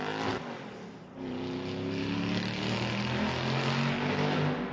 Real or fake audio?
real